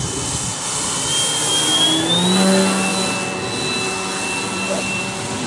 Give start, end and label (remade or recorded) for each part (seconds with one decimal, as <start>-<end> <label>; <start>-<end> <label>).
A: 0.0-5.5 recorded

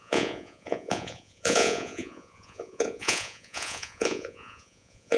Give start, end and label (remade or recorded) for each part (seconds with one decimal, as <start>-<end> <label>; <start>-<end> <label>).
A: 0.0-5.2 remade

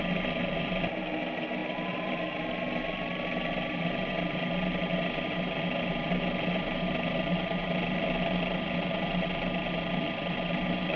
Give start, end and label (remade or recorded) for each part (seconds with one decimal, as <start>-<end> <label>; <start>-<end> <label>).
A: 0.0-11.0 recorded

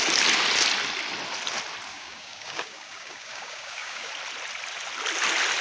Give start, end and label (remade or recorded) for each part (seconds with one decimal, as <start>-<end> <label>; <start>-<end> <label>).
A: 0.0-1.9 recorded; 1.9-4.1 remade; 4.1-5.6 recorded

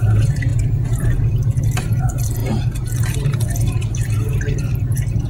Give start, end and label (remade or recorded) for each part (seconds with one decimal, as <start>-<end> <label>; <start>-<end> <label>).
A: 0.0-5.3 recorded